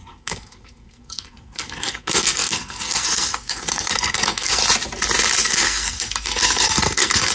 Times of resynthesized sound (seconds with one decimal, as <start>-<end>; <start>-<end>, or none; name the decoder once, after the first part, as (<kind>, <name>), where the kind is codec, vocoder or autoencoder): 0.0-4.6 (codec, SNAC); 5.4-7.3